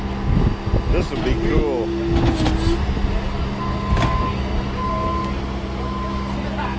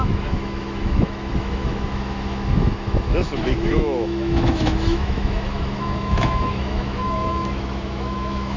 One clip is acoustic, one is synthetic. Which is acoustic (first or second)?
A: first